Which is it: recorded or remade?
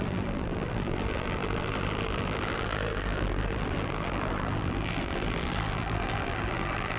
remade